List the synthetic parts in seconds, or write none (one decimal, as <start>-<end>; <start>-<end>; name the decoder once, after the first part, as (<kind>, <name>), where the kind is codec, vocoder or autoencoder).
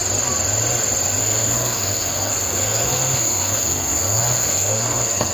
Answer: 1.2-5.3 (codec, SNAC)